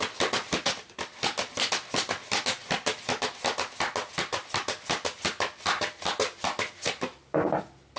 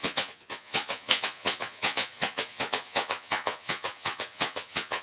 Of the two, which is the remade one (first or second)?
second